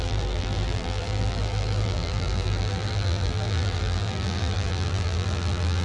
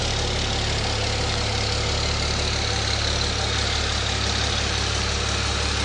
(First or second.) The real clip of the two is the second